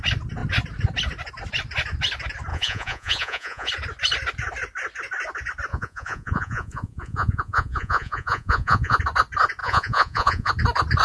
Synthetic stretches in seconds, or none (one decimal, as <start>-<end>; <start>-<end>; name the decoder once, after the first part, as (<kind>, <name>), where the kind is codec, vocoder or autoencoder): 2.5-3.7 (vocoder, Vocos); 5.7-9.0; 9.6-10.5